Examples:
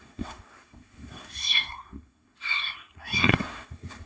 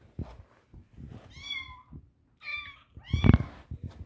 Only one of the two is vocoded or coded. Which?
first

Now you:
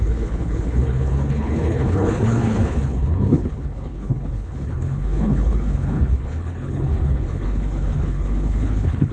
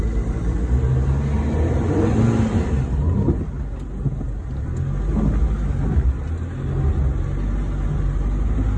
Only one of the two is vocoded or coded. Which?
first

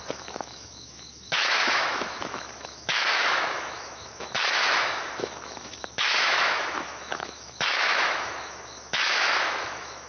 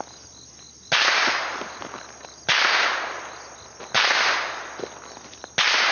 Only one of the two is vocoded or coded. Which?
first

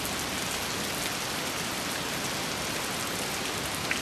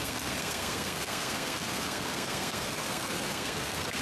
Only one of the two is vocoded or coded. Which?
second